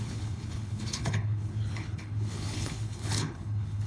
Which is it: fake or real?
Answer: fake